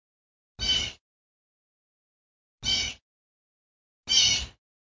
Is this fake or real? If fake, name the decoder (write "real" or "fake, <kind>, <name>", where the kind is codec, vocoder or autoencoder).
real